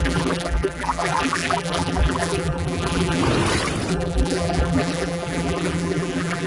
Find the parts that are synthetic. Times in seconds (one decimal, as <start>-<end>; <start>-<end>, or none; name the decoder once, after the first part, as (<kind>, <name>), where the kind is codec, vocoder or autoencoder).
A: 0.0-3.2 (vocoder, BigVGAN v2); 3.9-6.5